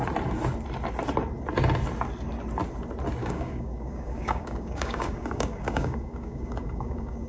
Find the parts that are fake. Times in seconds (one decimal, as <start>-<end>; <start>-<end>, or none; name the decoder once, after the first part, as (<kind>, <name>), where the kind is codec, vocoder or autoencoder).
3.2-7.3 (codec, DAC)